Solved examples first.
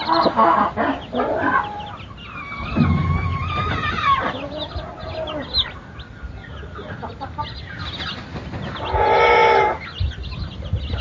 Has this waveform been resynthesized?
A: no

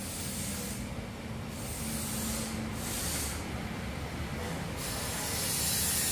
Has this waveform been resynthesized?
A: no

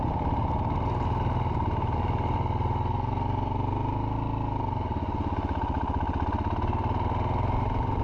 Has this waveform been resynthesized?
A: no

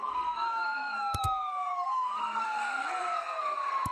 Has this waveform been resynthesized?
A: yes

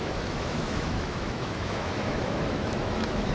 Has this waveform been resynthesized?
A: yes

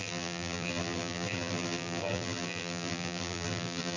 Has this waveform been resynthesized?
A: yes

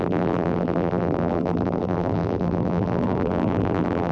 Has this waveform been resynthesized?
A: yes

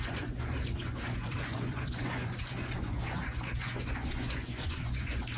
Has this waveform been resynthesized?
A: yes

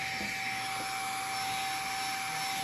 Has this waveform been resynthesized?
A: no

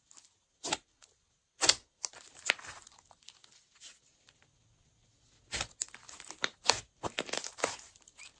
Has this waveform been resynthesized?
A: no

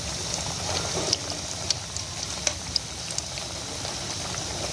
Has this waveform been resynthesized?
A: yes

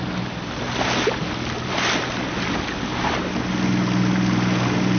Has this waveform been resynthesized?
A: no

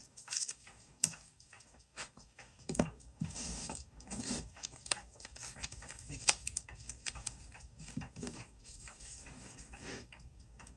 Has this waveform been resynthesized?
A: yes